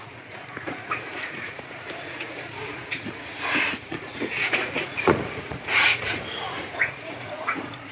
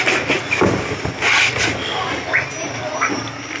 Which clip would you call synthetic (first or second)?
first